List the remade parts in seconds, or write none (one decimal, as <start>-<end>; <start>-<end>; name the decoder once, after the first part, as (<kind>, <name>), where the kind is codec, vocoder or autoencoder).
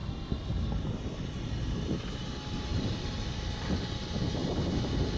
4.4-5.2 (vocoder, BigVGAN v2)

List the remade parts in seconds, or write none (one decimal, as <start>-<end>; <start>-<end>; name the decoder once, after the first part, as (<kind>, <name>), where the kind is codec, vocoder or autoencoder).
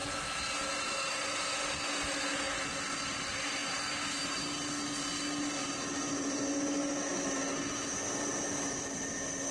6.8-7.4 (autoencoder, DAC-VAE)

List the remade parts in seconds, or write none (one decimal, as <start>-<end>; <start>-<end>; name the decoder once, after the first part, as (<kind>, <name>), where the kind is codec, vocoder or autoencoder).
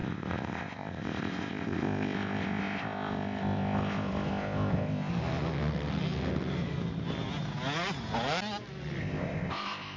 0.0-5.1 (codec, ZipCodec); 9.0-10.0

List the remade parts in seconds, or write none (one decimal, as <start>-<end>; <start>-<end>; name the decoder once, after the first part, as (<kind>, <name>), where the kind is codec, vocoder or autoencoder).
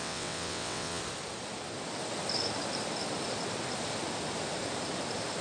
0.0-1.0 (vocoder, WaveNeXt)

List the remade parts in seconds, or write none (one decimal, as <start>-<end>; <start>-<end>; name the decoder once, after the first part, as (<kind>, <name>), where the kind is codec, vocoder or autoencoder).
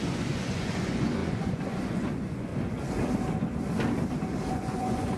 0.0-2.5 (vocoder, Vocos); 4.5-5.2